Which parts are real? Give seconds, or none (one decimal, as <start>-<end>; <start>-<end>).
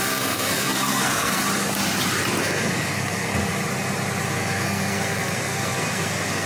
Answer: 1.4-2.4; 3.3-4.3